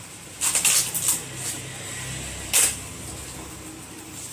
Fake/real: real